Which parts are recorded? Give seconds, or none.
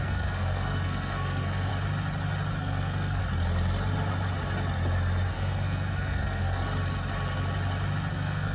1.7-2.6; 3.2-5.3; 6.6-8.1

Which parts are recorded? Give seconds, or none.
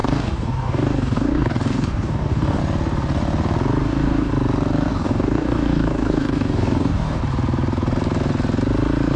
2.6-3.8; 4.3-4.9; 7.2-9.2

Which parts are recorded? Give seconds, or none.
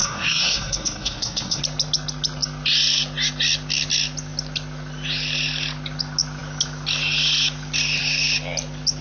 1.6-9.0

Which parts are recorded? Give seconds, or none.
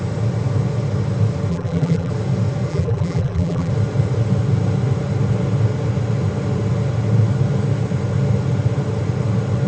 0.0-1.5; 2.1-2.7; 3.7-9.7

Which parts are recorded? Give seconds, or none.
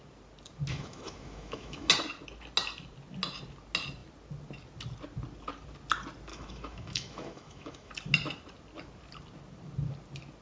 0.0-0.7; 1.9-6.3; 7.9-10.4